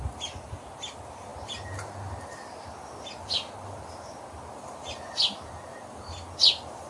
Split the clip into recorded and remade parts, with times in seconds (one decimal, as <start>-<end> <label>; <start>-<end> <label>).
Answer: 0.0-6.9 recorded